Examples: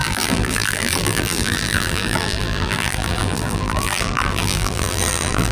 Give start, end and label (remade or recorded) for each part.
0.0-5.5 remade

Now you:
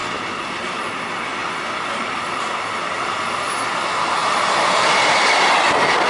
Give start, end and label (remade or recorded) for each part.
0.0-1.4 recorded; 1.4-3.4 remade; 3.4-6.1 recorded

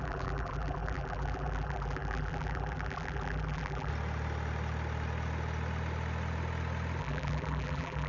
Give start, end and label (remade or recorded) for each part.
0.0-3.9 remade; 3.9-7.0 recorded; 7.0-8.1 remade

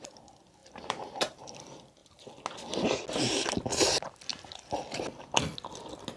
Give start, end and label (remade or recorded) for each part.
0.0-0.6 recorded; 0.6-1.4 remade; 1.4-6.2 recorded